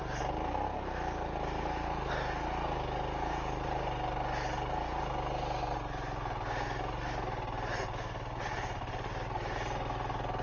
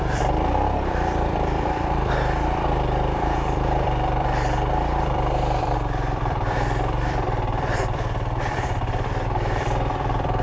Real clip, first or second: first